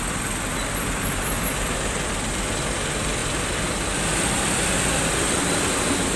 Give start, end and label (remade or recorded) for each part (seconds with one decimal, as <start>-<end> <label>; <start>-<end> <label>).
0.0-6.2 recorded

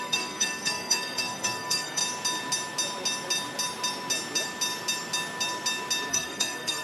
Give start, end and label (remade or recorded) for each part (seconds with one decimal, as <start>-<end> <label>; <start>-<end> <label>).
0.0-2.0 remade; 2.0-6.1 recorded; 6.1-6.8 remade